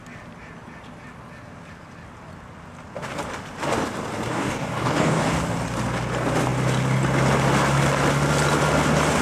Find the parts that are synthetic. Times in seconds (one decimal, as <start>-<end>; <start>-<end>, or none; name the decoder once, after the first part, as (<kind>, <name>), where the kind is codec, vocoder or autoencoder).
4.3-5.3 (codec, DAC)